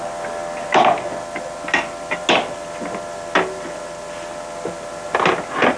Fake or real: real